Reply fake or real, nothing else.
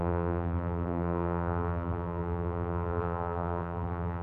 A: fake